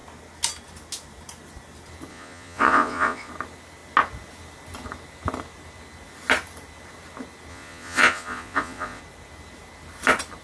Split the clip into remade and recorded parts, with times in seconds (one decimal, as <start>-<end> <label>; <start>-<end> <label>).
0.0-2.1 recorded; 2.1-3.3 remade; 3.3-7.5 recorded; 7.5-9.0 remade; 9.0-10.4 recorded